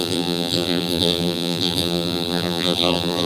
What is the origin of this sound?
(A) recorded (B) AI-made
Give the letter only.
B